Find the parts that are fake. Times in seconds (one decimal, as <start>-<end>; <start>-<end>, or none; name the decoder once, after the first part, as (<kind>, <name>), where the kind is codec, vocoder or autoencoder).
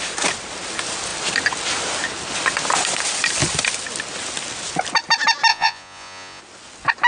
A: 5.5-6.4 (vocoder, Vocos)